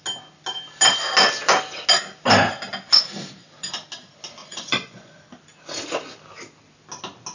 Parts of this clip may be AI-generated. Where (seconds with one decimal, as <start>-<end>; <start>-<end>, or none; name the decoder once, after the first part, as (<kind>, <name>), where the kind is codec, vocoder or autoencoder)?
4.4-5.1 (vocoder, Vocos)